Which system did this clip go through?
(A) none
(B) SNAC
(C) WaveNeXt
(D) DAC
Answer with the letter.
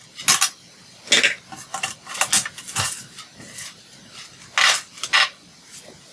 A